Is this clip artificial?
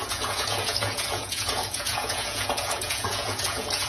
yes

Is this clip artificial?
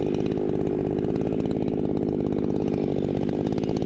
no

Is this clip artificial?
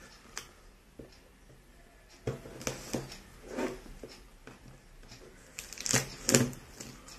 no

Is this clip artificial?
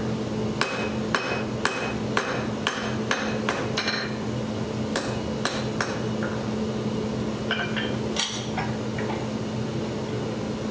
no